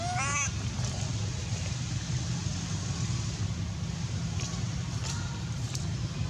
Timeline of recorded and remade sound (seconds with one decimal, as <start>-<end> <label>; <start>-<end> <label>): 0.0-6.3 recorded